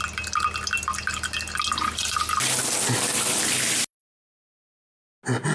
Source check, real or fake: real